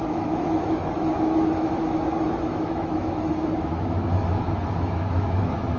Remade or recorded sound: remade